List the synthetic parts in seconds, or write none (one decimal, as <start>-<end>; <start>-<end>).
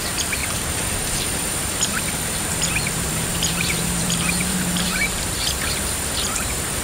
0.0-6.8